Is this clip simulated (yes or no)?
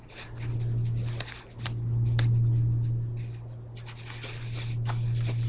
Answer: no